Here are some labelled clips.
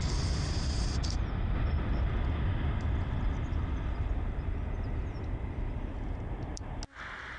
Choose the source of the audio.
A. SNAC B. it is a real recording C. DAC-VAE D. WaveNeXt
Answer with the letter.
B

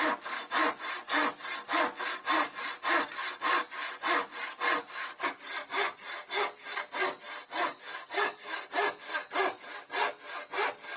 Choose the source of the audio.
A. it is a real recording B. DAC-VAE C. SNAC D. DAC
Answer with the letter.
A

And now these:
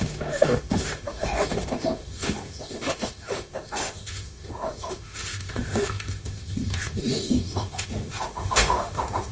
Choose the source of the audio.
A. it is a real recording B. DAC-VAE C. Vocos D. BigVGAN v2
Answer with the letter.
B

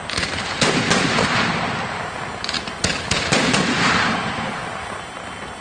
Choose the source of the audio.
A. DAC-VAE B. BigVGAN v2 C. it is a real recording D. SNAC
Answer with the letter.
C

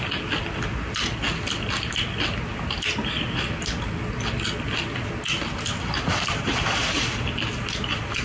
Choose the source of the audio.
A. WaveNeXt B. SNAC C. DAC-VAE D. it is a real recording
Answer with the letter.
D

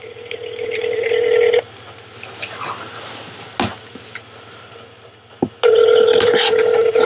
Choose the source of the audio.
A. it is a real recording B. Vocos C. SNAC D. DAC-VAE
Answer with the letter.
A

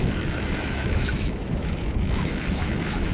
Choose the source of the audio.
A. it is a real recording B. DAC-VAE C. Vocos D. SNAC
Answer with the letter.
B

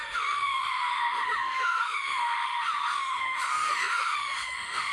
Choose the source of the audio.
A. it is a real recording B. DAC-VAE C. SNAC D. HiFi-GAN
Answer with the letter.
B